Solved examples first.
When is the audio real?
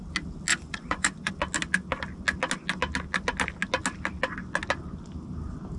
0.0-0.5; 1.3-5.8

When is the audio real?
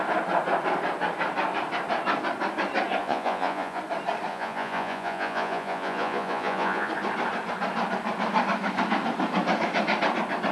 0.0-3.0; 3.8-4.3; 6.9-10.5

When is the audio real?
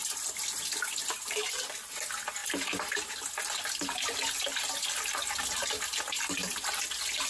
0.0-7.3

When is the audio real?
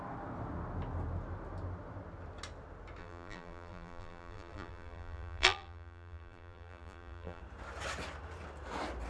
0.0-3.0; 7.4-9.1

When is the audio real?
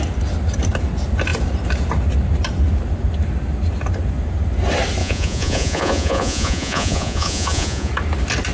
0.0-5.0; 7.9-8.5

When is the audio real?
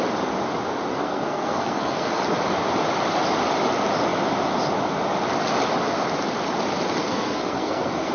0.0-0.9; 2.2-7.0